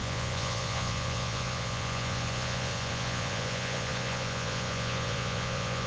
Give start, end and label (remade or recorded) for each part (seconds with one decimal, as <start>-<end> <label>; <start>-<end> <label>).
0.0-5.9 remade